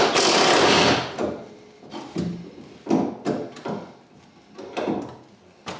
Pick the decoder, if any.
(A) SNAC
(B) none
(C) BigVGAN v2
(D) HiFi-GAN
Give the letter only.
B